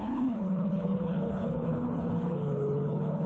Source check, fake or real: fake